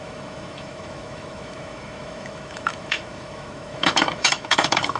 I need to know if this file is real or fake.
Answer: fake